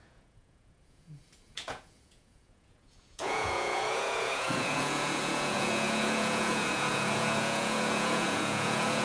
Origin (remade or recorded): remade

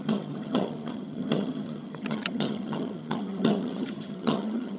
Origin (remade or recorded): remade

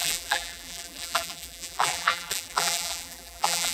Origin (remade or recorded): remade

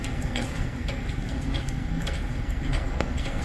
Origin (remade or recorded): remade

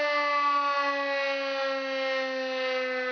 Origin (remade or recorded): recorded